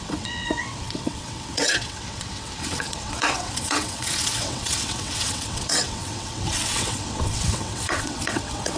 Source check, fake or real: fake